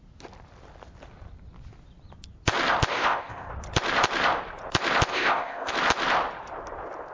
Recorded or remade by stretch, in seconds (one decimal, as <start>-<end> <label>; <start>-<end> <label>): 0.0-2.9 recorded; 2.9-3.5 remade; 3.5-5.1 recorded; 5.1-5.7 remade; 5.7-7.1 recorded